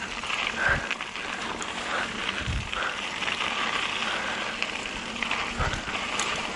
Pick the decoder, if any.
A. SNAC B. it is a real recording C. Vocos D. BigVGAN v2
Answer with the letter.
B